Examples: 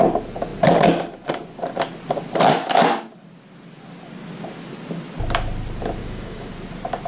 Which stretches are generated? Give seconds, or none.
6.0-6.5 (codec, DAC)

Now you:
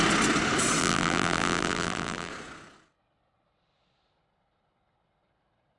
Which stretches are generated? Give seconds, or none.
0.8-2.3 (vocoder, BigVGAN v2)

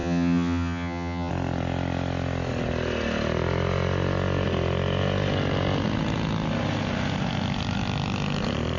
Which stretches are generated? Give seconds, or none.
0.0-1.3 (vocoder, HiFi-GAN)

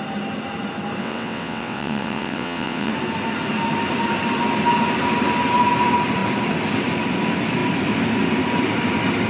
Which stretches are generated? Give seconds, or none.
1.0-2.9 (vocoder, WaveNeXt)